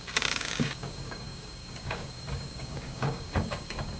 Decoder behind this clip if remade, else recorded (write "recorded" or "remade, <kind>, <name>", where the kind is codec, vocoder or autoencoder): remade, codec, DAC